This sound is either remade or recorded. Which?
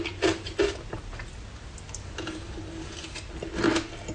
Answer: recorded